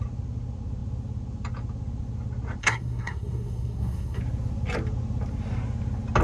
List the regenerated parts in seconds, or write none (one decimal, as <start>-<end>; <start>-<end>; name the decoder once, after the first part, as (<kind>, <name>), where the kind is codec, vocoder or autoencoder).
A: 2.6-4.2 (codec, SNAC)